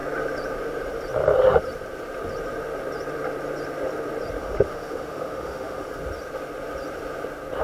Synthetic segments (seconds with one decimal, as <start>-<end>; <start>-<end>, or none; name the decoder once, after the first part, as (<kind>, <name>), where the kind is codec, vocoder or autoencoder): 4.4-5.9 (autoencoder, DAC-VAE)